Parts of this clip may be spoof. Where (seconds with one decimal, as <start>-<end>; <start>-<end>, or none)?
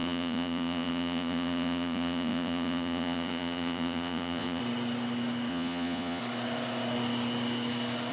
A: 0.0-4.6; 5.5-6.2